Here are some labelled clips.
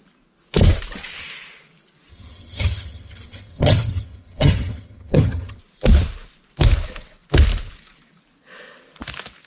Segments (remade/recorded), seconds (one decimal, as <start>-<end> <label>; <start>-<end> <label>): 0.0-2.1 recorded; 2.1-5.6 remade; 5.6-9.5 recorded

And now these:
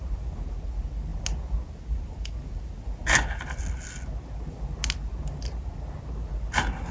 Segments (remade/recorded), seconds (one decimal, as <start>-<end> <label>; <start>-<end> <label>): 0.0-6.9 recorded

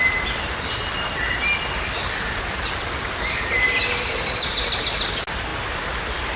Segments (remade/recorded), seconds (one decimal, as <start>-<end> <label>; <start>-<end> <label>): 0.0-6.4 recorded